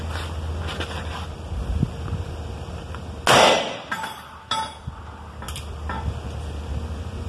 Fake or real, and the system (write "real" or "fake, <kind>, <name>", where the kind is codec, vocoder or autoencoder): real